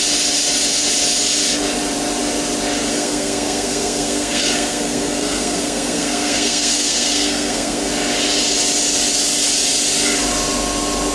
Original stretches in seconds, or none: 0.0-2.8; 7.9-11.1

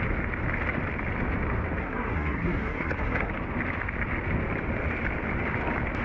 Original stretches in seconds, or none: 0.0-1.8; 3.3-6.0

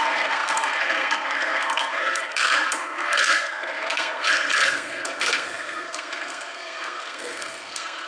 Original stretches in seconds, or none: none

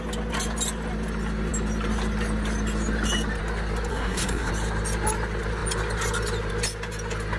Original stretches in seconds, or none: 0.0-3.9; 4.5-7.4

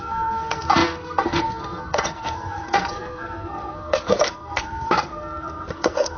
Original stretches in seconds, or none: none